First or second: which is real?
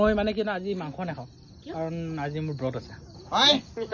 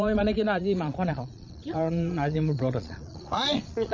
first